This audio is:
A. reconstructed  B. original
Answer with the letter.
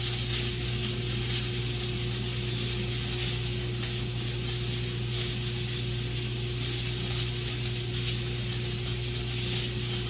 B